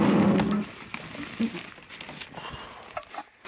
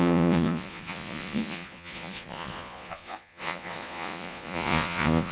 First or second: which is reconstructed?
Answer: second